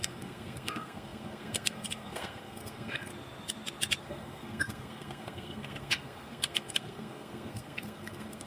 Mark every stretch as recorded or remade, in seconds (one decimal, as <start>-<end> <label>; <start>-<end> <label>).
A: 0.0-3.1 remade; 3.1-4.0 recorded; 4.0-8.5 remade